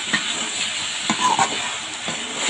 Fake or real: real